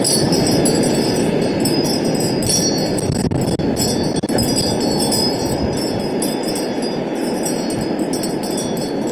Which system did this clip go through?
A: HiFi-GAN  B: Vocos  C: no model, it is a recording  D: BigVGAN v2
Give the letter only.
C